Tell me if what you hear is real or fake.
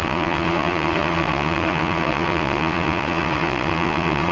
fake